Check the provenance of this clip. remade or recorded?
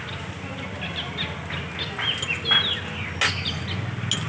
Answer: recorded